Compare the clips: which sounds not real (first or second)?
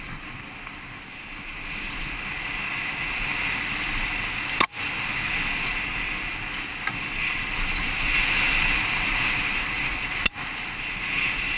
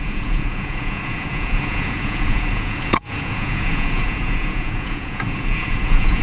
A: second